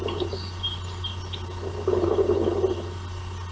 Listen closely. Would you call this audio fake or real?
real